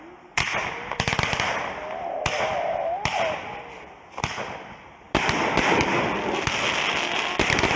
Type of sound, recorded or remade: recorded